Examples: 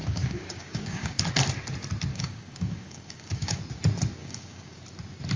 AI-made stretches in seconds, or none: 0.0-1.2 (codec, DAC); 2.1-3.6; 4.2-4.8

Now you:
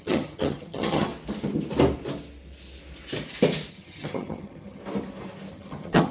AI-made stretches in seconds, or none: 0.0-1.1 (vocoder, HiFi-GAN); 3.7-4.8; 5.5-6.1

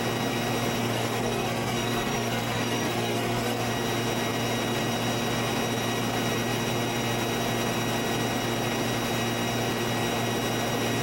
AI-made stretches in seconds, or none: 0.8-3.7 (codec, SNAC)